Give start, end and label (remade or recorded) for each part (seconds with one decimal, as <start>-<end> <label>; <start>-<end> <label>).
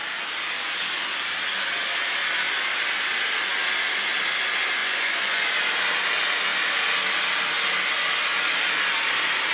0.0-4.8 recorded; 4.8-5.4 remade; 5.4-9.5 recorded